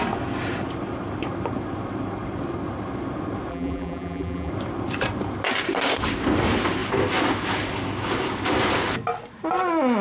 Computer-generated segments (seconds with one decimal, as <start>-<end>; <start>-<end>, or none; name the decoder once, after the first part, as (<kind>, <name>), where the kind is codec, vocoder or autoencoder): 3.5-4.5 (vocoder, BigVGAN v2)